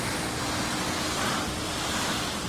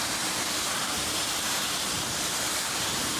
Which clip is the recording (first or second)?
first